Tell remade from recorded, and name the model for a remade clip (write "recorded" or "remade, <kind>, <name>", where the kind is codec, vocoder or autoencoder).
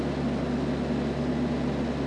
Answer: recorded